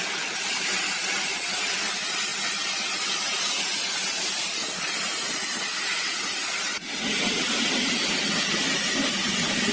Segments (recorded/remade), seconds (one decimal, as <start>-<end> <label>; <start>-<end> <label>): 0.0-1.3 recorded; 1.3-1.9 remade; 1.9-6.7 recorded; 6.7-7.5 remade; 7.5-9.7 recorded